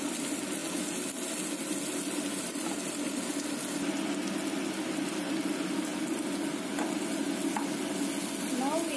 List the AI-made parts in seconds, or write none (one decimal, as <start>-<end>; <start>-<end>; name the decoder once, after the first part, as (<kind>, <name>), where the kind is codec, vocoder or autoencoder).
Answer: none